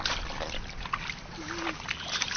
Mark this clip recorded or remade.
recorded